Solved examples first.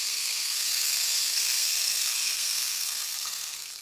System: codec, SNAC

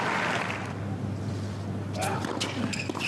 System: none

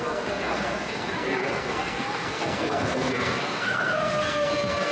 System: codec, SNAC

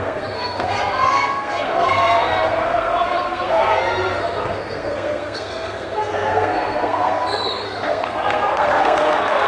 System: codec, SNAC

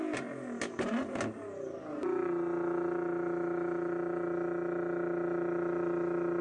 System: none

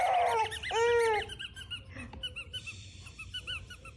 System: none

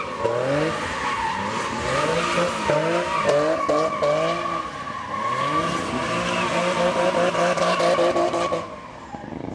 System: none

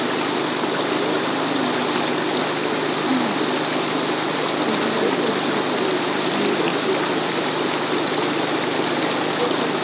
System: none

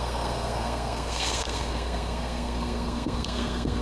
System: codec, SNAC